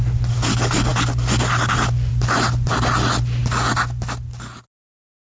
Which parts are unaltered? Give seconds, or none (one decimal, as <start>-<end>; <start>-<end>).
0.0-5.2